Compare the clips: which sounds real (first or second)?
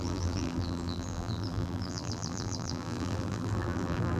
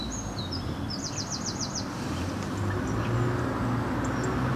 second